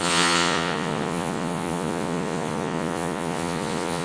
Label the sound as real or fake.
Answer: fake